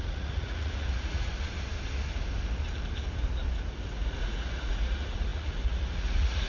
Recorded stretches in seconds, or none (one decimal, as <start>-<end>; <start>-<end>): 1.3-3.8

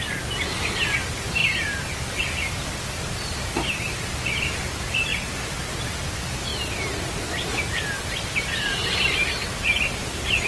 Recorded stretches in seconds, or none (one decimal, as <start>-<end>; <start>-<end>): 0.0-10.5

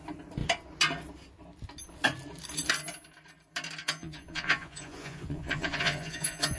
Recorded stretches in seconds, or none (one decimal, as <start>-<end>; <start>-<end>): 0.0-3.8

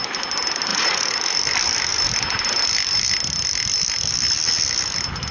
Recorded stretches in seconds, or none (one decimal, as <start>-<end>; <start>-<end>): 0.0-0.7; 1.2-5.3

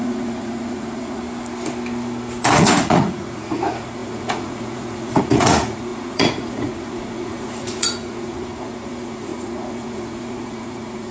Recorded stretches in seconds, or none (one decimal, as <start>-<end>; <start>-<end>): 1.2-2.5

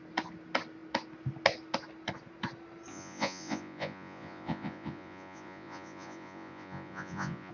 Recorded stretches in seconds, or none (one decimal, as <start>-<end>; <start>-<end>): 0.0-2.9